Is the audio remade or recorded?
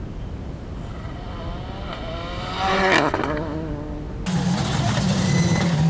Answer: recorded